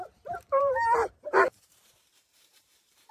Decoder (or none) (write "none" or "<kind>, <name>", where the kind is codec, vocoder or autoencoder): vocoder, BigVGAN v2